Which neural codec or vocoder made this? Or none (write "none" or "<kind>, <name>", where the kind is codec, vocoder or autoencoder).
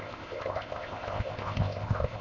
codec, ZipCodec